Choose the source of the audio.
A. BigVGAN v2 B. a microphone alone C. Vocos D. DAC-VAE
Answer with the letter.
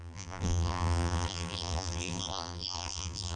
A